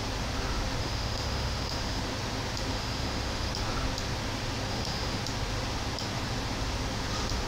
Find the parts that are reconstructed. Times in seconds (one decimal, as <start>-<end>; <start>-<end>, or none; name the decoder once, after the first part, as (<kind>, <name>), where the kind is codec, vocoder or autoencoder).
0.8-2.0 (autoencoder, DAC-VAE); 2.7-3.5; 4.7-5.2